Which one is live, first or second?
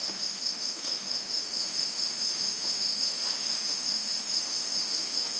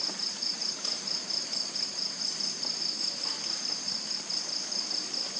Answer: second